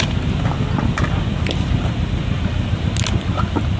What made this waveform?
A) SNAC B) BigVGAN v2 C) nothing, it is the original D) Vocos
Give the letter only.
C